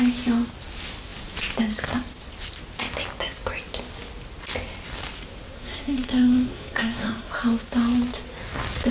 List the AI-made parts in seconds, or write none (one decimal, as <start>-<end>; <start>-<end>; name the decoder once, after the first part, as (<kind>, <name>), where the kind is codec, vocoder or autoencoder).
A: 5.5-7.3 (codec, SNAC)